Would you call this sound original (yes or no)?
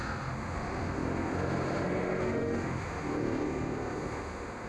no